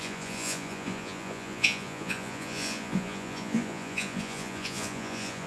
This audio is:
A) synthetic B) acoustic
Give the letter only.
A